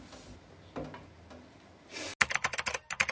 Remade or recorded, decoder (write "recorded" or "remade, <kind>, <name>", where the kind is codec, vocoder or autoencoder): recorded